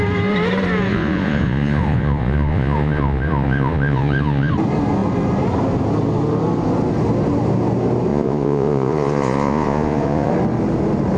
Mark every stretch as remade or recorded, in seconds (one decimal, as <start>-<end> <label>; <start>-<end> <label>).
0.0-0.9 recorded; 0.9-4.5 remade; 4.5-8.1 recorded; 8.1-10.3 remade; 10.3-11.2 recorded